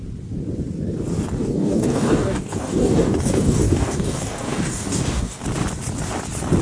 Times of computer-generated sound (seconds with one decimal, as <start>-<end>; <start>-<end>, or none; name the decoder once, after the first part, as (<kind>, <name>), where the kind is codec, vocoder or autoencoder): 1.4-5.4 (codec, DAC)

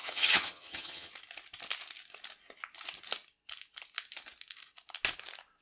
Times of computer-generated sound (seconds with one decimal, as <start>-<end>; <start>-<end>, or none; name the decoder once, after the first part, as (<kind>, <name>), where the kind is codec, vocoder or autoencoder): 0.0-1.1 (vocoder, HiFi-GAN)

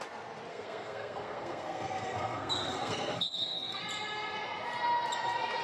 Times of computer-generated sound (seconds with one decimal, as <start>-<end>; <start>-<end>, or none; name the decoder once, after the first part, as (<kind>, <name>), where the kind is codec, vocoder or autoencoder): 0.5-3.8 (codec, SNAC)

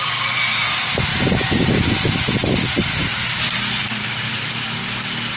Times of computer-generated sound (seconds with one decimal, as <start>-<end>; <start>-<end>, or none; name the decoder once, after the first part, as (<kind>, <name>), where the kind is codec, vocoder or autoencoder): 0.0-4.8 (vocoder, BigVGAN v2)

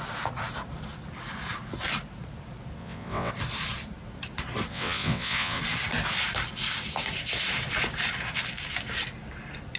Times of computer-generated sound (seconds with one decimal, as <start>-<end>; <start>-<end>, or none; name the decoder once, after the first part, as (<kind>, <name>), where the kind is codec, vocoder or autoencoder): 2.8-3.3 (vocoder, WaveNeXt); 4.7-5.6

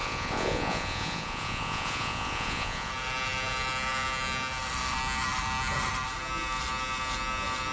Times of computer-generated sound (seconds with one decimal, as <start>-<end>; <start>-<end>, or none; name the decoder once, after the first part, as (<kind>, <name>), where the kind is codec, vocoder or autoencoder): 0.0-2.9 (vocoder, Vocos)

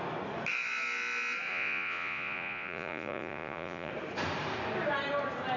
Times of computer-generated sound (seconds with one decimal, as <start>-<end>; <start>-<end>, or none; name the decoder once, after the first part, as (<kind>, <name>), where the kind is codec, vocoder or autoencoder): 1.5-3.9 (vocoder, Vocos)

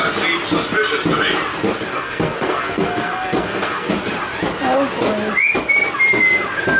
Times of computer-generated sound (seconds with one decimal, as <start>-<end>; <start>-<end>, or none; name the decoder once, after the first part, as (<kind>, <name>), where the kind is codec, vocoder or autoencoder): 1.9-3.9 (codec, SNAC)